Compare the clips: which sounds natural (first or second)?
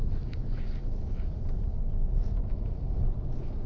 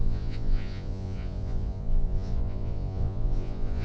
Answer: first